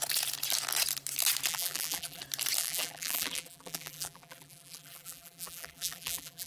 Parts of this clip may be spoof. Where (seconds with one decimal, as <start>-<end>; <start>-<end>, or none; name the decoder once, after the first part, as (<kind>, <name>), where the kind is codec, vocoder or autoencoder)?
1.5-2.2 (vocoder, BigVGAN v2); 2.6-6.5